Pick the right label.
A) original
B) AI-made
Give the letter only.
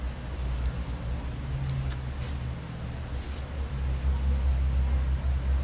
A